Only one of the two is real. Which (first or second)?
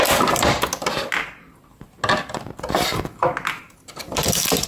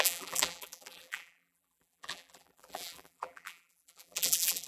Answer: first